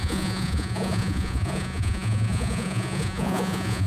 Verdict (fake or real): fake